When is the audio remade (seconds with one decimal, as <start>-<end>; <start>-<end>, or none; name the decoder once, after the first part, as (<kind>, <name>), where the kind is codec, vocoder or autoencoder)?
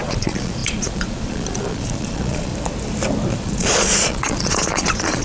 0.0-2.5 (vocoder, Vocos); 3.3-5.2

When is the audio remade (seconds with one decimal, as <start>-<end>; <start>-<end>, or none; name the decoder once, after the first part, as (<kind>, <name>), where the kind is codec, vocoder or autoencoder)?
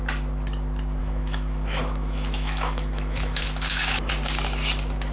1.0-4.1 (autoencoder, DAC-VAE)